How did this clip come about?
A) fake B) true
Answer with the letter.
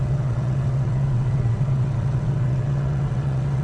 A